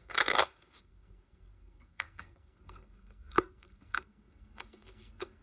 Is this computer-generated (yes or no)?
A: yes